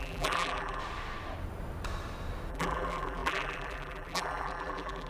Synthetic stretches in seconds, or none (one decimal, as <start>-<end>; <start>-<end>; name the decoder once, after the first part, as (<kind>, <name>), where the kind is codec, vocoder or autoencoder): 0.0-0.8 (vocoder, BigVGAN v2); 2.5-5.1